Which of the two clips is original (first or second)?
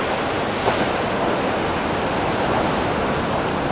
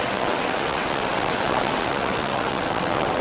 first